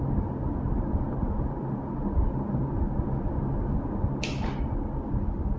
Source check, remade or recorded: recorded